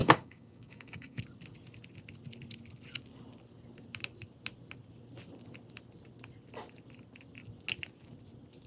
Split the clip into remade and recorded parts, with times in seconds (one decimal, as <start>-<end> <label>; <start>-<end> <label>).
0.0-1.2 remade; 1.2-8.7 recorded